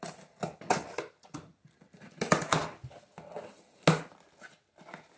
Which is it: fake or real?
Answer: real